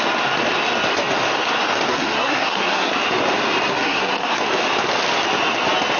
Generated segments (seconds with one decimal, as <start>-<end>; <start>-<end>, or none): 1.9-2.9; 3.7-4.4